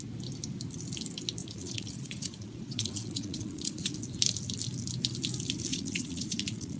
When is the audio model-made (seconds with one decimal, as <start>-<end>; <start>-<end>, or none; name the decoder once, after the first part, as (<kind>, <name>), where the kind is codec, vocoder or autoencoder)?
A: 1.4-3.9 (vocoder, Vocos); 5.7-6.8